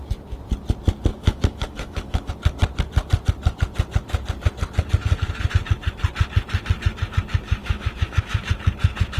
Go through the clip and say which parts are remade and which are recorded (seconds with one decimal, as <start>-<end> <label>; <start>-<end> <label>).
0.0-1.1 recorded; 1.1-2.3 remade; 2.3-7.6 recorded; 7.6-8.5 remade; 8.5-9.2 recorded

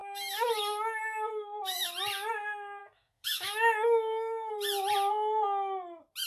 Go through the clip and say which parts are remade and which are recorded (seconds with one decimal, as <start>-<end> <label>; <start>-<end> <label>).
0.0-1.9 remade; 1.9-2.8 recorded; 2.8-4.5 remade; 4.5-6.3 recorded